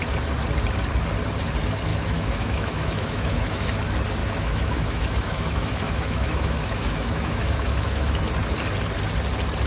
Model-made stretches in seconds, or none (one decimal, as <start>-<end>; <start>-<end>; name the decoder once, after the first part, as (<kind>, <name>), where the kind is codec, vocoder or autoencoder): 1.9-3.8 (autoencoder, DAC-VAE); 4.2-8.2